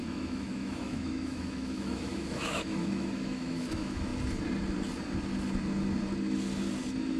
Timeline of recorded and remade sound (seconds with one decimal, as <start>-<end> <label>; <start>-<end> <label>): 0.0-4.1 remade; 4.1-7.2 recorded